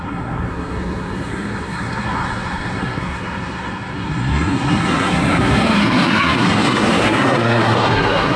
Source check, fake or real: fake